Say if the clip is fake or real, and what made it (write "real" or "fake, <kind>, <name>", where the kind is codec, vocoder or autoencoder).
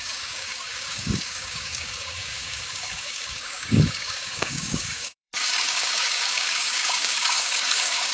fake, codec, DAC